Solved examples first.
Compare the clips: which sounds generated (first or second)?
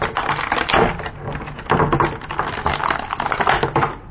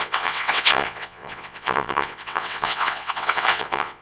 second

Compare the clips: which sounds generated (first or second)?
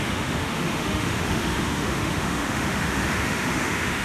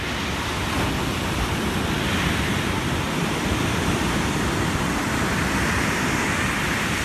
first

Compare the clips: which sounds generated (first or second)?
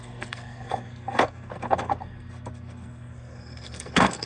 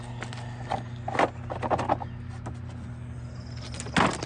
first